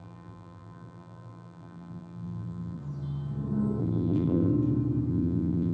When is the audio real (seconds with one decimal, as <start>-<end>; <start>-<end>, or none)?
2.8-3.8; 4.5-5.1